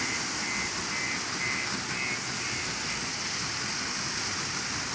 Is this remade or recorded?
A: recorded